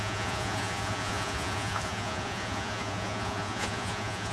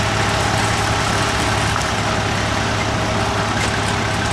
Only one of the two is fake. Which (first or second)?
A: first